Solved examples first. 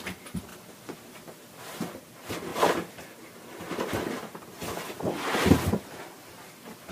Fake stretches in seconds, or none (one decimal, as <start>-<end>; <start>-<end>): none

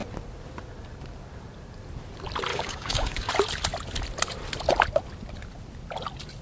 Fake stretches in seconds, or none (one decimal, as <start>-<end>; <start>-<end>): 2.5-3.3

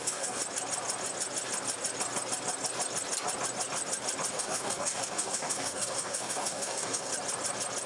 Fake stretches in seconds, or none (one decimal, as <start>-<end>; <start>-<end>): 0.0-0.4; 4.3-7.1

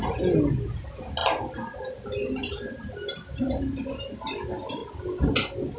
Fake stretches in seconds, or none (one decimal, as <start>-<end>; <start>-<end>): none